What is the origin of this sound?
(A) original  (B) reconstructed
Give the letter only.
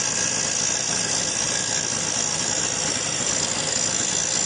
A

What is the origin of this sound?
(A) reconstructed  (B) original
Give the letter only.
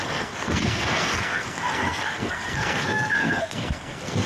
A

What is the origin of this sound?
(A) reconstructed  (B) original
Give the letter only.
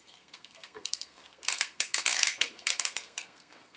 A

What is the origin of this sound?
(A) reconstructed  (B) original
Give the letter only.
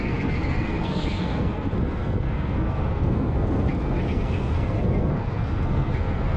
A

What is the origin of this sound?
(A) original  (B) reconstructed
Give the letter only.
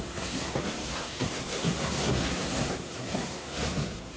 B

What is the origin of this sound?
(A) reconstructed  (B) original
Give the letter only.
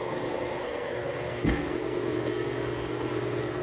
A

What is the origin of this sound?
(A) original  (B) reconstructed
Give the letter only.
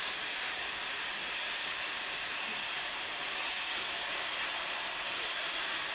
A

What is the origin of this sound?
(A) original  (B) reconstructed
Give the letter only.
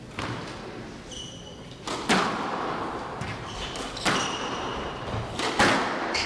A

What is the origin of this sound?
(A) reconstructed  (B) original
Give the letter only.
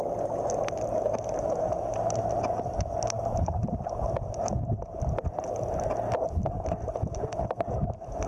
B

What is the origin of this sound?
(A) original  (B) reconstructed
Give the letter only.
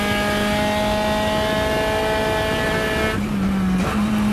A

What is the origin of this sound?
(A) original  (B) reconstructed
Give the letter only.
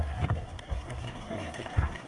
B